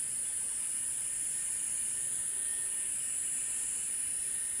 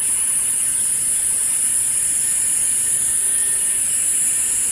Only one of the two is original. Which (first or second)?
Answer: first